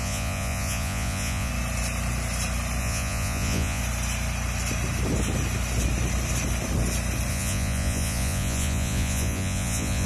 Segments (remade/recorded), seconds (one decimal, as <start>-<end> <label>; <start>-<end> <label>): 0.0-1.5 remade; 1.5-2.8 recorded; 2.8-3.8 remade; 3.8-7.3 recorded; 7.3-10.1 remade